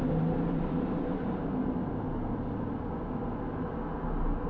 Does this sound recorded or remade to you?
recorded